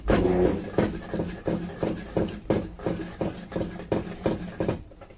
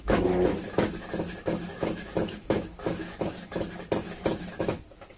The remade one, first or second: second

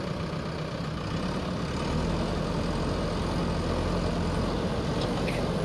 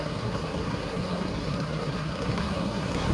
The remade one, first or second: second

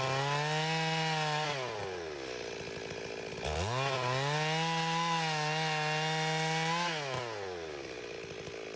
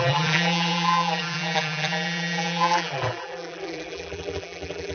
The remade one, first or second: second